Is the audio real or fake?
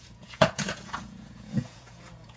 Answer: fake